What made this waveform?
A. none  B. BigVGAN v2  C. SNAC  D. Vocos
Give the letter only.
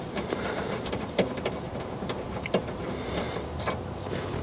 B